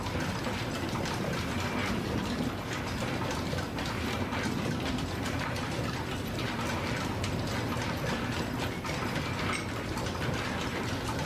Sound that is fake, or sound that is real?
real